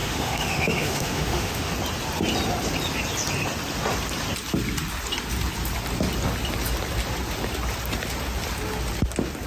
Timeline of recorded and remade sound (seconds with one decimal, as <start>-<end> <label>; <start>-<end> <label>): 0.0-1.7 remade; 1.7-9.5 recorded